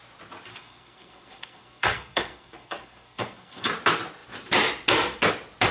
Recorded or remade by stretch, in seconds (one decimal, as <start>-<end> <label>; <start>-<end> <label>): 0.0-0.5 recorded; 0.5-3.7 remade; 3.7-5.7 recorded